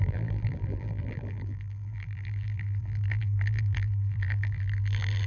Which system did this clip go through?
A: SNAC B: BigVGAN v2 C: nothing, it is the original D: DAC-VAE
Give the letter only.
B